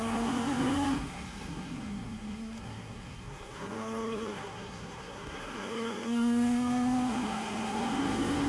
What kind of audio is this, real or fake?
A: fake